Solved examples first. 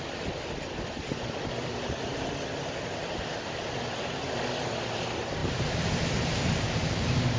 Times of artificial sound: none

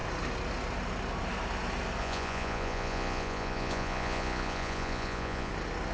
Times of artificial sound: 2.0-5.5 (vocoder, Vocos)

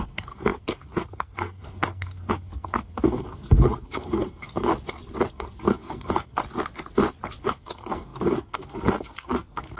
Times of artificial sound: 0.0-4.7 (codec, SNAC); 5.3-6.4; 7.4-9.8

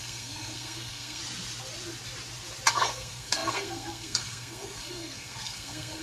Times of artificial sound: 0.0-1.2 (codec, SNAC); 2.7-6.0

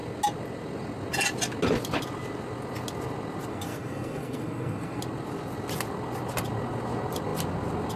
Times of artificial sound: 3.5-5.0 (codec, SNAC)

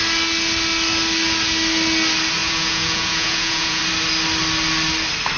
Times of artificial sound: 2.4-3.8 (vocoder, Vocos)

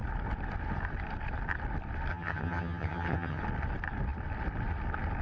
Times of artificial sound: 2.1-3.4 (vocoder, HiFi-GAN)

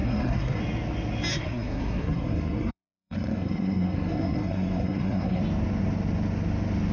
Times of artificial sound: 0.0-0.6 (codec, SNAC); 1.3-5.4